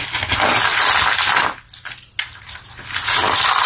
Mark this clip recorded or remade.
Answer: recorded